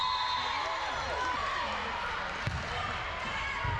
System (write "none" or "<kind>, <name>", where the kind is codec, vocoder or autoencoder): none